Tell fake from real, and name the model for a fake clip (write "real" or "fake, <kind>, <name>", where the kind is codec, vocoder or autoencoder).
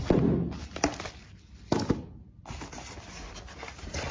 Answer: real